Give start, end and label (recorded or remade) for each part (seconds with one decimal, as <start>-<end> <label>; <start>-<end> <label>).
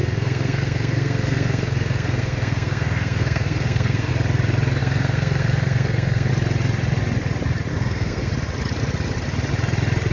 0.0-4.1 remade; 4.1-4.8 recorded; 4.8-6.3 remade; 6.3-7.7 recorded; 7.7-8.3 remade; 8.3-10.1 recorded